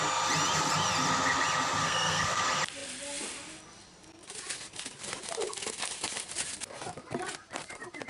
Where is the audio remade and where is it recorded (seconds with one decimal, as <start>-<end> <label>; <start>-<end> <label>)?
0.0-1.8 recorded; 1.8-2.4 remade; 2.4-8.1 recorded